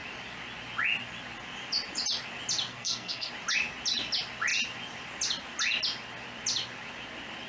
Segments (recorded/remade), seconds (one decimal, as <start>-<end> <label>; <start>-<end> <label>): 0.0-2.7 recorded; 2.7-3.3 remade; 3.3-7.5 recorded